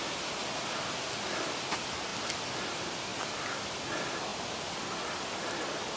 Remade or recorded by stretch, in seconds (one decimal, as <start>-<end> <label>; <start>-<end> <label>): 0.0-6.0 recorded